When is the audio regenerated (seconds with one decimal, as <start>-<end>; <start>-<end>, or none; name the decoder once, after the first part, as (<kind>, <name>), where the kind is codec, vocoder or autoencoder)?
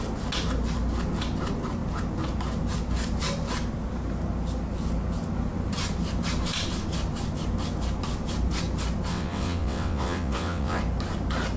9.1-10.8 (vocoder, WaveNeXt)